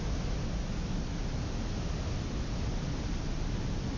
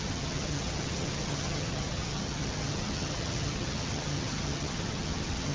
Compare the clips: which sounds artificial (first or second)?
second